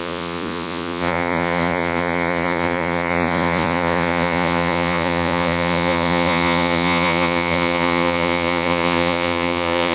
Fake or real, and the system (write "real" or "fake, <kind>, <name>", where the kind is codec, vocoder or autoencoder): fake, vocoder, Vocos